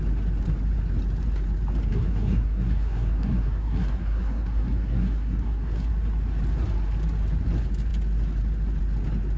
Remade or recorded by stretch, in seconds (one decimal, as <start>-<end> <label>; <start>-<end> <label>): 0.0-1.9 recorded; 1.9-5.9 remade; 5.9-9.4 recorded